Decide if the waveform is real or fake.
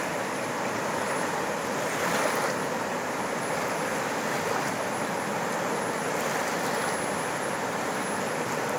real